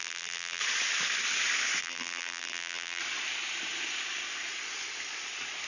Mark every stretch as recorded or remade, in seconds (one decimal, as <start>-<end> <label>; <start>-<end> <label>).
0.0-0.6 remade; 0.6-1.8 recorded; 1.8-3.0 remade; 3.0-5.7 recorded